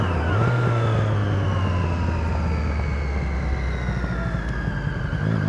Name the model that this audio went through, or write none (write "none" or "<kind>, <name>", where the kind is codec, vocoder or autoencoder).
none